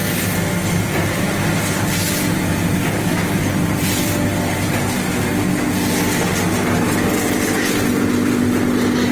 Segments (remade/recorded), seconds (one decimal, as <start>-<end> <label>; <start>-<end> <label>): 0.0-2.8 recorded; 2.8-3.5 remade; 3.5-9.1 recorded